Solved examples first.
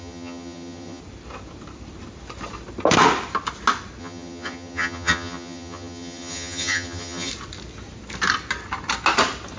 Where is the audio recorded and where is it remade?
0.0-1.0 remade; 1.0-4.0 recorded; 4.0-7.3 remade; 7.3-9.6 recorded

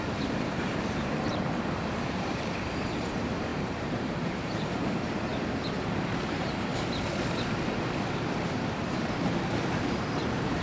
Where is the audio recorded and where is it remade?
0.0-6.7 remade; 6.7-9.4 recorded; 9.4-10.6 remade